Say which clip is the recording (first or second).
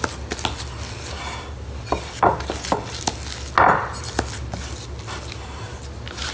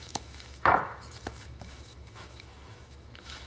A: first